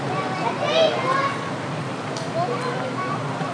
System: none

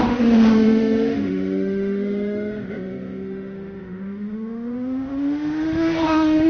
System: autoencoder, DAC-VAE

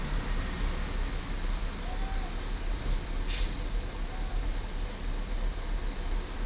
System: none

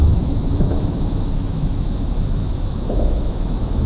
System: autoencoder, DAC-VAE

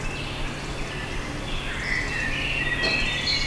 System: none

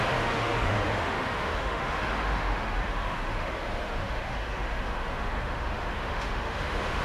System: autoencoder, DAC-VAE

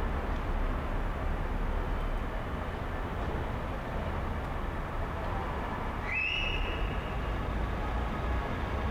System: none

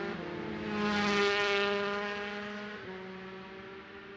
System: none